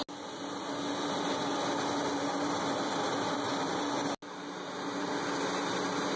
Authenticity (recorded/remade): recorded